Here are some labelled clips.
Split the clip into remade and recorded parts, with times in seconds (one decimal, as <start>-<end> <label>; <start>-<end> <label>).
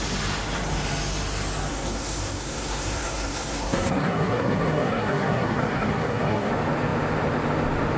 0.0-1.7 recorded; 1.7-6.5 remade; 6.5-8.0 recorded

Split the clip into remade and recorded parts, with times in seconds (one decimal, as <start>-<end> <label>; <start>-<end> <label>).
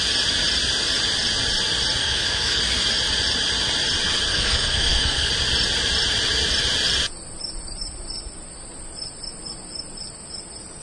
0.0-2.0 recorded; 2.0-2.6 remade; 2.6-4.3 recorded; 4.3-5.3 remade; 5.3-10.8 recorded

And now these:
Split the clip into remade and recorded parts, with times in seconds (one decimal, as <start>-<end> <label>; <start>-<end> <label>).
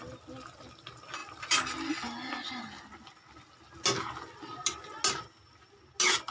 0.0-6.3 recorded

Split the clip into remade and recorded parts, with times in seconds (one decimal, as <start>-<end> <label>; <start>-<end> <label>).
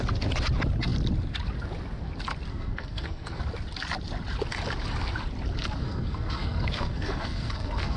0.0-2.5 recorded; 2.5-3.4 remade; 3.4-5.6 recorded; 5.6-8.0 remade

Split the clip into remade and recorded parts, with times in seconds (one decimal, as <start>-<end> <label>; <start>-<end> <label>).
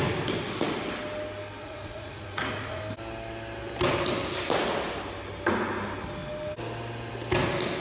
0.0-1.6 recorded; 1.6-2.8 remade; 2.8-7.8 recorded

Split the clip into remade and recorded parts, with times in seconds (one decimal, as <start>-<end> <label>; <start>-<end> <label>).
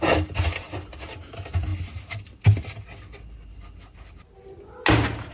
0.0-5.3 recorded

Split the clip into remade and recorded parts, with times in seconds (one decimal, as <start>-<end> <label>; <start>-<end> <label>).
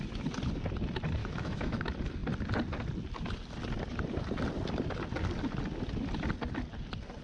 0.0-1.2 recorded; 1.2-1.8 remade; 1.8-7.2 recorded